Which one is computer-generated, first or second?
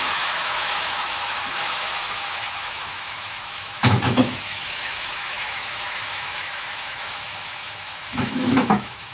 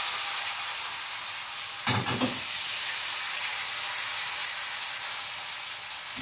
first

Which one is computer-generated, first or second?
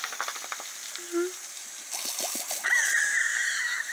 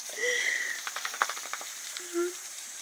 second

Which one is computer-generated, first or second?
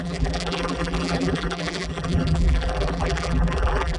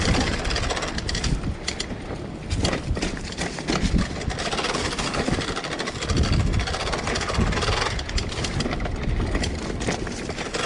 first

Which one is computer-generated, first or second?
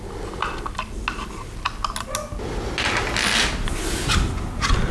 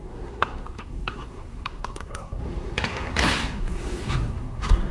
second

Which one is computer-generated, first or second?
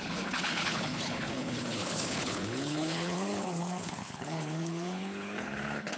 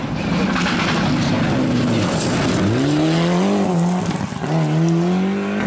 first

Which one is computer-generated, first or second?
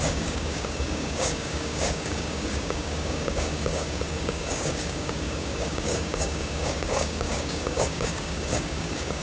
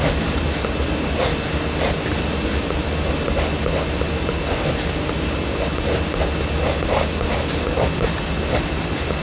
first